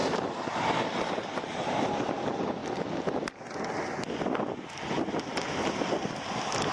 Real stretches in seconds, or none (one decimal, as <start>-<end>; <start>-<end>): 1.9-6.7